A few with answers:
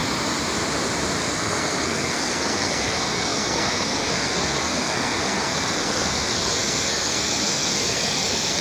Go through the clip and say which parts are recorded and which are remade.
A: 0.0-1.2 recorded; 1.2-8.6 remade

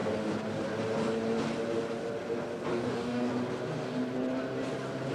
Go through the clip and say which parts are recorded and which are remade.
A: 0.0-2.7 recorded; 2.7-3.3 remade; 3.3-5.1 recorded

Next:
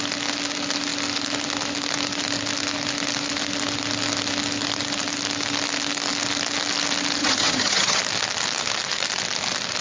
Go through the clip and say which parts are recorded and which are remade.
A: 0.0-7.2 recorded; 7.2-8.0 remade; 8.0-9.8 recorded

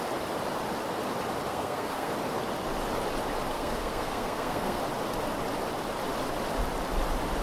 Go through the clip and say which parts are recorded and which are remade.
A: 0.0-1.5 recorded; 1.5-2.1 remade; 2.1-3.5 recorded; 3.5-4.8 remade; 4.8-7.4 recorded

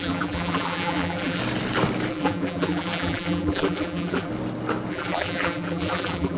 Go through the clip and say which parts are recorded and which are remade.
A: 0.0-1.4 remade; 1.4-2.1 recorded; 2.1-4.3 remade; 4.3-4.9 recorded; 4.9-6.4 remade